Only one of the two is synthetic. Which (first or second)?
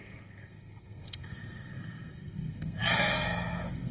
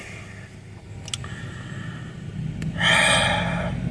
first